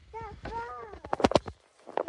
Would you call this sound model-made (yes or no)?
no